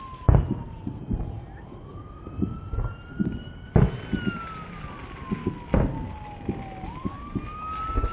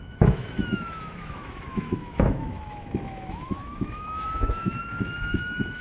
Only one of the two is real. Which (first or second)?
first